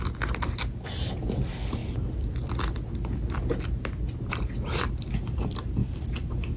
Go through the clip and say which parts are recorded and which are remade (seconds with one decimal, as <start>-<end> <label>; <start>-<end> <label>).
0.0-6.6 recorded